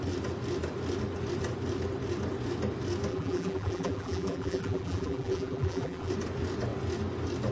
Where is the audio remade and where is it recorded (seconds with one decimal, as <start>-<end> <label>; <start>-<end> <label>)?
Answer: 0.0-3.1 recorded; 3.1-6.1 remade; 6.1-7.5 recorded